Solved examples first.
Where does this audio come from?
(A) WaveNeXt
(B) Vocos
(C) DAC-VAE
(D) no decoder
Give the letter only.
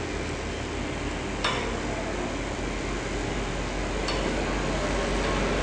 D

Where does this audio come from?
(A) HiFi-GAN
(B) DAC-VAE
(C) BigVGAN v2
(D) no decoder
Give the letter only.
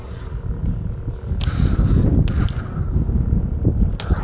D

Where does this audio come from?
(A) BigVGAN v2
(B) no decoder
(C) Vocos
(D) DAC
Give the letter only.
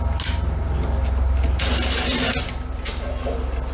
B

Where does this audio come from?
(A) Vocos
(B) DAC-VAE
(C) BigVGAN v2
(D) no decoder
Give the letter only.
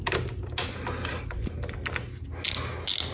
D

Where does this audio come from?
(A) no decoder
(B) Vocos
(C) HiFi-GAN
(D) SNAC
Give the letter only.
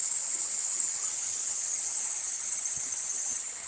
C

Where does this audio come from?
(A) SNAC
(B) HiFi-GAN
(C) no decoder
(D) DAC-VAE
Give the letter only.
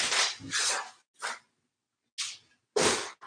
C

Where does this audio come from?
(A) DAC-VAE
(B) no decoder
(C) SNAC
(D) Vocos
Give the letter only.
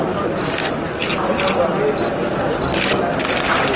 B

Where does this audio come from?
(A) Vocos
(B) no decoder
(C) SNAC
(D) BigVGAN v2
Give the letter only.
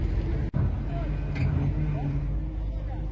B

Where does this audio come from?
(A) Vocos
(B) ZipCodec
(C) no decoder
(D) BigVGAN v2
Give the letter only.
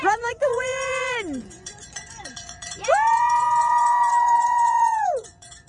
A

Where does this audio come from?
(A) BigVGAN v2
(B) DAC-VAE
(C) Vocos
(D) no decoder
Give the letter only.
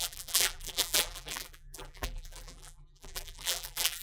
A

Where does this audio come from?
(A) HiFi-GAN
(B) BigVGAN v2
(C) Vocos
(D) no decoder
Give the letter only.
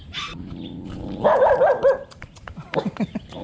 B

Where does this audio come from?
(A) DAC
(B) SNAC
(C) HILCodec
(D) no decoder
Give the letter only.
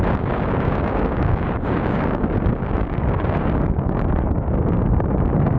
A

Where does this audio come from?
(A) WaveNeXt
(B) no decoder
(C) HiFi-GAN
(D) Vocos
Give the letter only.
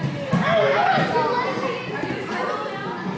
B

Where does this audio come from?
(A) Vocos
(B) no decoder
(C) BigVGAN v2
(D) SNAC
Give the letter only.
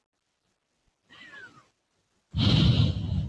B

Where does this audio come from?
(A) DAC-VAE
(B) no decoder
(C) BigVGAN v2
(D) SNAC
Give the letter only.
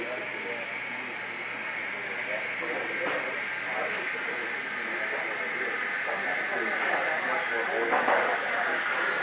B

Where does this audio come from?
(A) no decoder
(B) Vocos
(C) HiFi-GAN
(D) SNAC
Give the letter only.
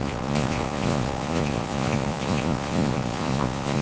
B